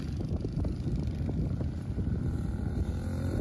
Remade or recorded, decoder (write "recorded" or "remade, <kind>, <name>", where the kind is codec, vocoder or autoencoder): recorded